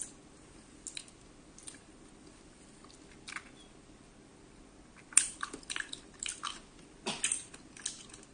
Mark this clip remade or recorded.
recorded